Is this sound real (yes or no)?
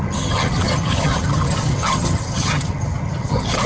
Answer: no